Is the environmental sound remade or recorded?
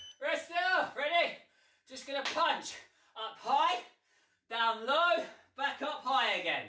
recorded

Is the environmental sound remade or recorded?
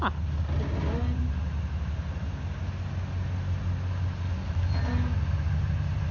recorded